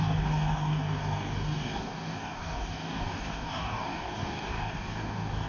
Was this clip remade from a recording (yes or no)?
yes